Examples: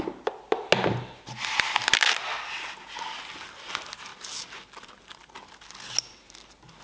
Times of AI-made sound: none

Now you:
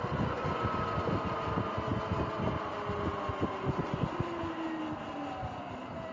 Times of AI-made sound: none

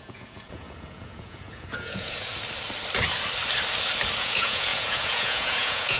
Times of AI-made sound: 0.0-2.3 (vocoder, Vocos); 4.2-6.0

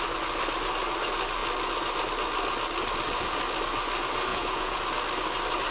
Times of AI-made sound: 4.3-4.8 (vocoder, Vocos)

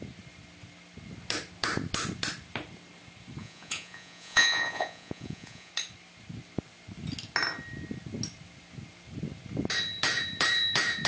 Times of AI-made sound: 3.4-5.7 (vocoder, Vocos)

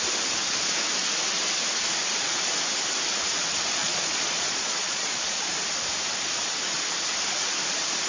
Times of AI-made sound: 3.8-5.5 (vocoder, Vocos)